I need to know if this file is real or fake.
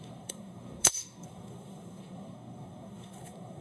fake